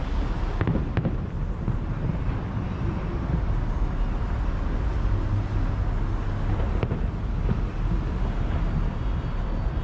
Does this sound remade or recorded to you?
recorded